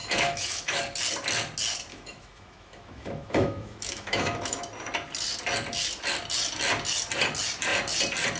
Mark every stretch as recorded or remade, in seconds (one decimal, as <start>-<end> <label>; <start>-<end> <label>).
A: 0.0-0.8 remade; 0.8-1.9 recorded; 1.9-4.6 remade; 4.6-8.4 recorded